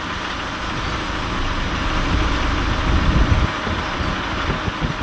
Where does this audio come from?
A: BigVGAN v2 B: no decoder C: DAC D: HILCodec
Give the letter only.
B